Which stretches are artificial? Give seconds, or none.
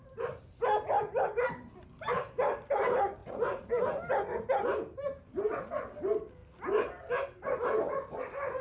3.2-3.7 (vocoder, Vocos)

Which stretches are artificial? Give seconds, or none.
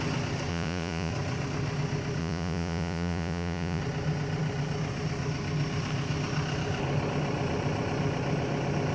0.5-1.1 (vocoder, Vocos); 2.2-3.8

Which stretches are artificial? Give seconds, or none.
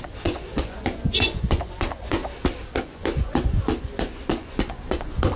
0.0-2.2 (vocoder, Vocos); 2.8-5.4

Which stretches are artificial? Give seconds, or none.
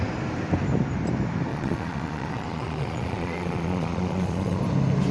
1.5-4.6 (vocoder, Vocos)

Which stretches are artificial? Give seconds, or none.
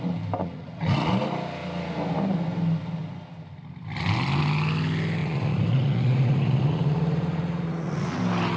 0.4-1.1 (vocoder, Vocos); 5.2-8.2